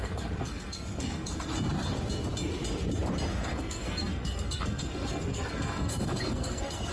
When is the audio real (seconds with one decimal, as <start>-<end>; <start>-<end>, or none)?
1.5-3.3